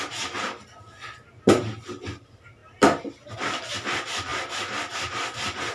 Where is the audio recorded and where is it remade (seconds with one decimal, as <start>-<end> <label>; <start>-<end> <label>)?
0.0-2.6 recorded; 2.6-3.1 remade; 3.1-5.7 recorded